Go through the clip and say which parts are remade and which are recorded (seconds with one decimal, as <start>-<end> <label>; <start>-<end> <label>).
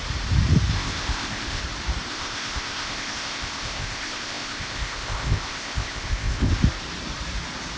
0.0-0.7 recorded; 0.7-1.6 remade; 1.6-2.1 recorded; 2.1-6.5 remade; 6.5-7.8 recorded